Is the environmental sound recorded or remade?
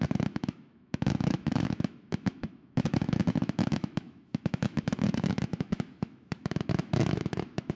remade